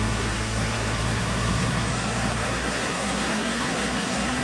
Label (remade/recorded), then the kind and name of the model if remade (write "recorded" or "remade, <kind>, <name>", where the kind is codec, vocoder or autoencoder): remade, codec, SNAC